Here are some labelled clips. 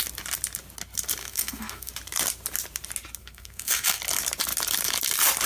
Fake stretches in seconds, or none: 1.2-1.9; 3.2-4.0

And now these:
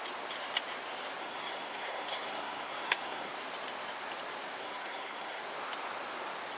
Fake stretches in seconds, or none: 1.2-3.3; 4.6-5.4

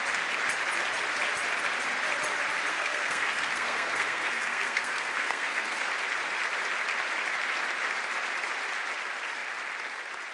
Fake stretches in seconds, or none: 2.7-5.9